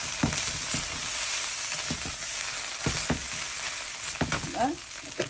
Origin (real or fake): real